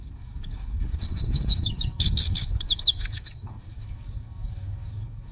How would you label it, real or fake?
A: fake